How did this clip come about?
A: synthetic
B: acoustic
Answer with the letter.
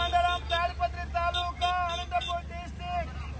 B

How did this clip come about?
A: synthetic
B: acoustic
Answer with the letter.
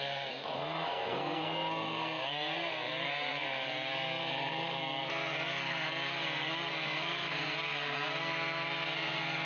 A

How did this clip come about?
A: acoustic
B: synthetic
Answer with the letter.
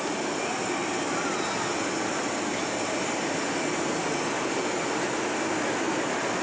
A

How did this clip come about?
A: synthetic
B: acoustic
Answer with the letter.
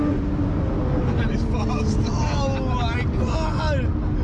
B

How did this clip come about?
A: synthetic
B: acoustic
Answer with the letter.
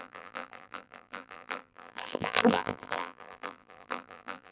A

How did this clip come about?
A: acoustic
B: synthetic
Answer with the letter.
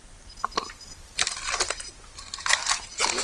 A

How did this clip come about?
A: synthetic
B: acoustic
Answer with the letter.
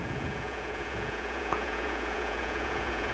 A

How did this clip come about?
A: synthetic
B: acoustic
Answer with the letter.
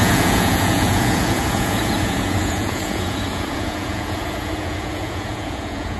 A